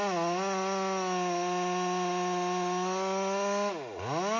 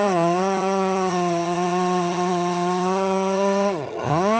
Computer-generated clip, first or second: second